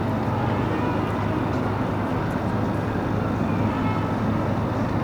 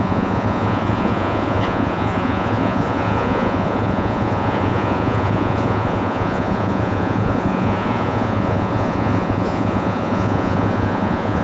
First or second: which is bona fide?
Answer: first